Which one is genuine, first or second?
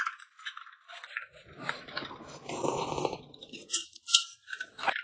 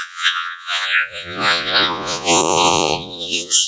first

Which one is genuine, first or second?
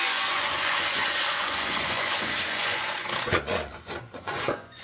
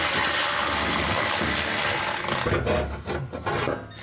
second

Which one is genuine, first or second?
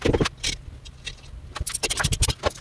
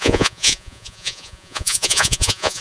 first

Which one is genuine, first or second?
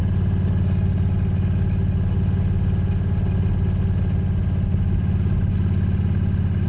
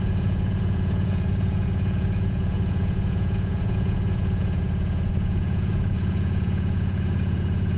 first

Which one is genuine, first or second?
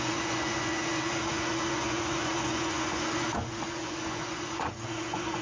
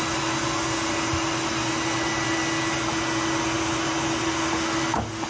second